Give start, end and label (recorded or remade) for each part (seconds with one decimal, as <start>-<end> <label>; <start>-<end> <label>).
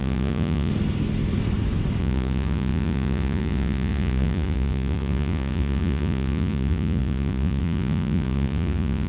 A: 0.0-0.7 remade; 0.7-2.0 recorded; 2.0-9.1 remade